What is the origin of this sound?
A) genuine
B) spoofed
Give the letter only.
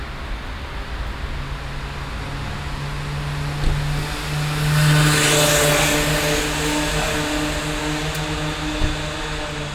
A